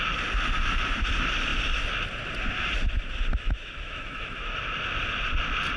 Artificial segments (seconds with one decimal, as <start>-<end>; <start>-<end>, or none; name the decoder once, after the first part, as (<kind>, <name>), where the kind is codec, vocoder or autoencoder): 3.3-4.6 (autoencoder, DAC-VAE)